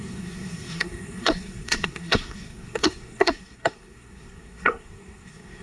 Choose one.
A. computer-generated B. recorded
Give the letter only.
A